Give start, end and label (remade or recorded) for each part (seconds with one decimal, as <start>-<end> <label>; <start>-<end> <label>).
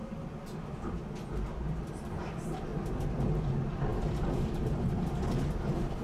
0.0-3.9 recorded; 3.9-5.3 remade; 5.3-6.0 recorded